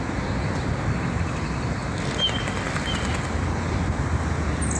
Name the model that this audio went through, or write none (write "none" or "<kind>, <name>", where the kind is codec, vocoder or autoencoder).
none